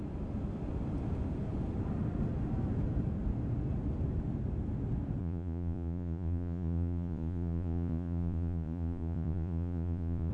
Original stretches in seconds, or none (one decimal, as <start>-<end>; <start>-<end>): 0.0-5.2